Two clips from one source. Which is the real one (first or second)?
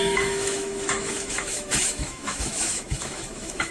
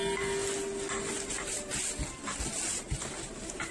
second